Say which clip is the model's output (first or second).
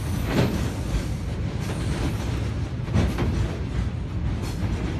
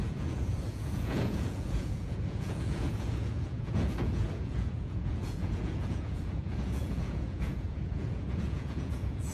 second